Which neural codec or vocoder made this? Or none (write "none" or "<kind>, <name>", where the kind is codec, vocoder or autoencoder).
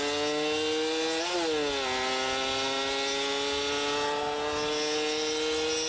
none